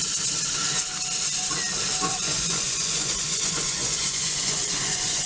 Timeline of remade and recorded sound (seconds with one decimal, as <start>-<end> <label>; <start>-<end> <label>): 0.0-2.1 recorded; 2.1-5.3 remade